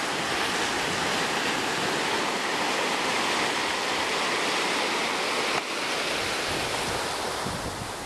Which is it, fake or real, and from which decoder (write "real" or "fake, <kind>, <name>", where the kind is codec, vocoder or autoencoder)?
real